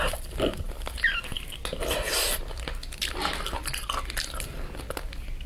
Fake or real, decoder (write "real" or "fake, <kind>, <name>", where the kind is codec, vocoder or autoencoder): real